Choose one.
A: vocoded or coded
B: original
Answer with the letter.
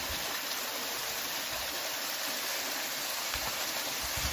B